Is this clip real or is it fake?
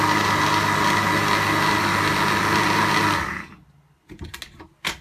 real